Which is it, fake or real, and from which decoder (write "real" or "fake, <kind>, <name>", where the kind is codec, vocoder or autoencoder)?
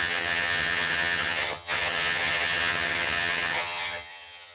fake, vocoder, HiFi-GAN